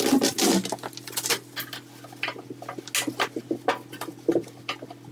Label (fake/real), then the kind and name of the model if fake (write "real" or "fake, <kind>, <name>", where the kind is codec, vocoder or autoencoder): real